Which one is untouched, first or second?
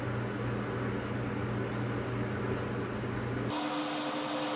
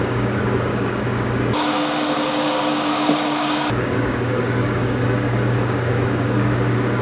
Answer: first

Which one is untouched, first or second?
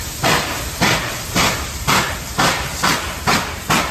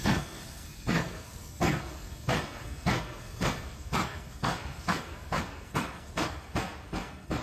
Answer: first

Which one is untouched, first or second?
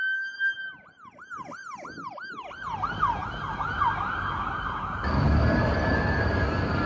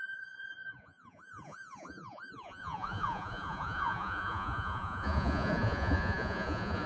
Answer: first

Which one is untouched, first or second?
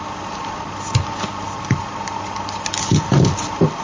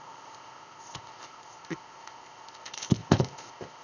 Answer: first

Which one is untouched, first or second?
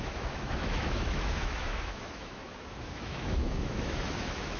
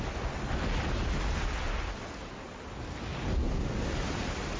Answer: second